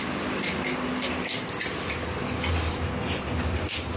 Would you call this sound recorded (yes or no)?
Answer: yes